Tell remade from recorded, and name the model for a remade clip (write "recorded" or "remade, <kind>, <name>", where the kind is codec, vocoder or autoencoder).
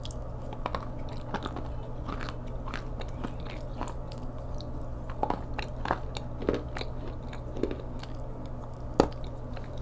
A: recorded